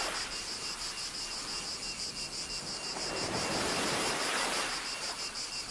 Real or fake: real